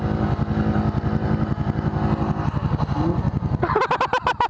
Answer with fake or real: real